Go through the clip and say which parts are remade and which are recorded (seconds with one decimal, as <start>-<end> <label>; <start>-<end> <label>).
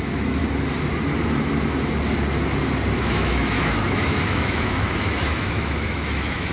0.0-0.4 remade; 0.4-3.0 recorded; 3.0-6.5 remade